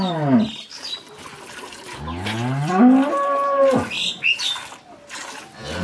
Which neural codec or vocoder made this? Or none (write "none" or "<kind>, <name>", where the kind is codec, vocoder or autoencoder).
none